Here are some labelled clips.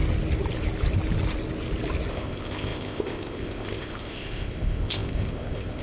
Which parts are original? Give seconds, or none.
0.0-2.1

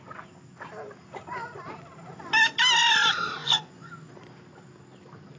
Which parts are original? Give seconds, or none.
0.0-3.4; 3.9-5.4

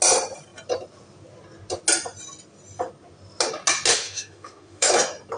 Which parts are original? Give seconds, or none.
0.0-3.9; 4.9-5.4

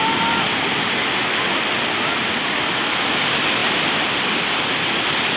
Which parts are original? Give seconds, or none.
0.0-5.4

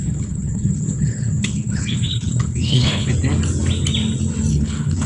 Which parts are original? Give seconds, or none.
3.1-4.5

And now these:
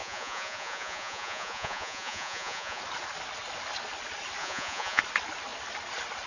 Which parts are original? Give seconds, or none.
2.8-4.4; 5.0-6.3

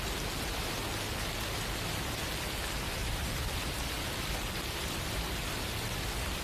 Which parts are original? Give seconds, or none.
0.0-3.0

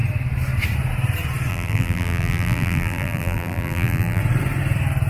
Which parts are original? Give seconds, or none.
0.0-1.5; 4.2-5.1